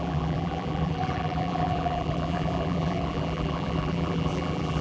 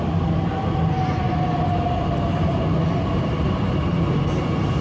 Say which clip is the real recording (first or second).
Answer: second